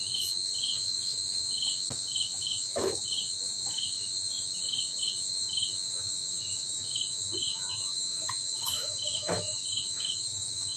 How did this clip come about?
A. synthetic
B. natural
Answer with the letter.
A